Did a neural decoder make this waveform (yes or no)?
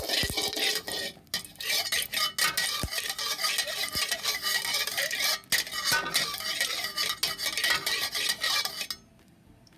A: no